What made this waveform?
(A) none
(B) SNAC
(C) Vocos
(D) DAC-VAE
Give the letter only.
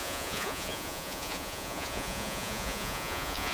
C